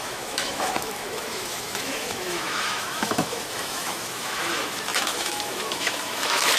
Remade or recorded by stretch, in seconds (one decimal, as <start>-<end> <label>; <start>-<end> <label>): 0.0-6.6 remade